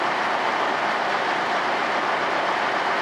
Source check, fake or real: fake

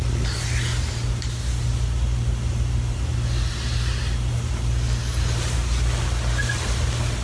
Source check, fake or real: real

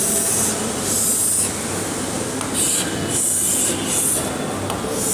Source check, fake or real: real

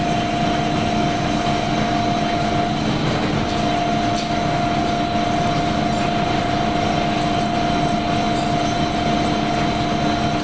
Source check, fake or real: real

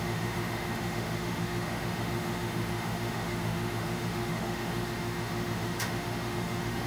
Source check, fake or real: fake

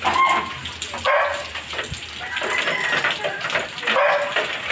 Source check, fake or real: real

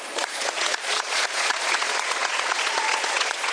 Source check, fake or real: fake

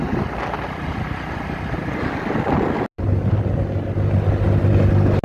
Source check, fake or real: real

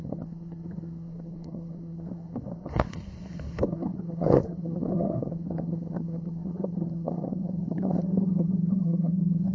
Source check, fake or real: fake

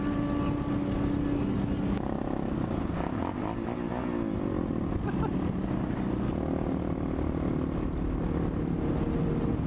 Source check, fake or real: real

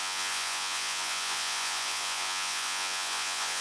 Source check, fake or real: fake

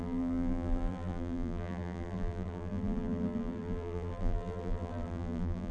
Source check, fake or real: fake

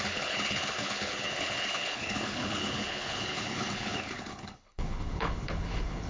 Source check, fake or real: fake